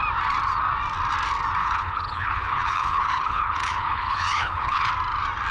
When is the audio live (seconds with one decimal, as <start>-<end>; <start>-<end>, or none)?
0.0-1.6; 4.9-5.5